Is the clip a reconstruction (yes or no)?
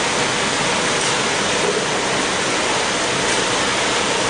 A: no